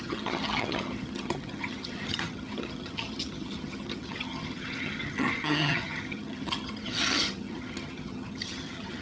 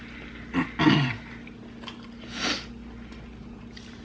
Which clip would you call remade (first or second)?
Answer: first